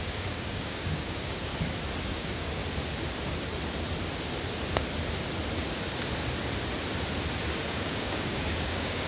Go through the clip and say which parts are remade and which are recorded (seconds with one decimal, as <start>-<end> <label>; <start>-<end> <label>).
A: 0.0-1.5 remade; 1.5-2.1 recorded; 2.1-2.6 remade; 2.6-7.7 recorded; 7.7-9.1 remade